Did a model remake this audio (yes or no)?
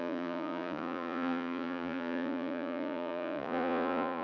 yes